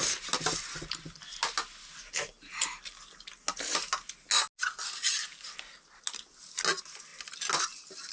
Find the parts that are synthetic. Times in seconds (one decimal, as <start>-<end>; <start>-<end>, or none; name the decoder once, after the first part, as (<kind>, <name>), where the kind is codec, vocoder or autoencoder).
none